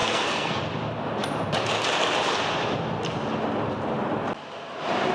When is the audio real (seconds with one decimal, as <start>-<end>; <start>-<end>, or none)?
0.6-5.1